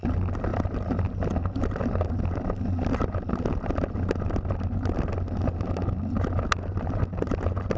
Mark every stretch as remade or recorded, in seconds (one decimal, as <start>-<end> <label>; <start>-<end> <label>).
0.0-7.8 recorded